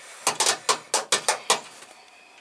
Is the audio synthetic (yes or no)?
no